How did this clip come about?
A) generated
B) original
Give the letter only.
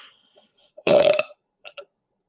A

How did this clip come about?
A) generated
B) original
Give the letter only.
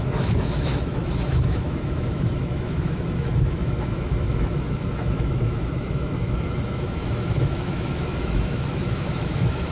A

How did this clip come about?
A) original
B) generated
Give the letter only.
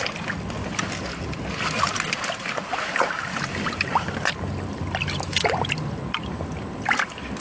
A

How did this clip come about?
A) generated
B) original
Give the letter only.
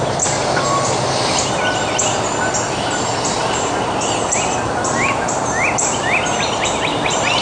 B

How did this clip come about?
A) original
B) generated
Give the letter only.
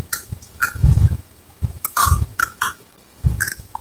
B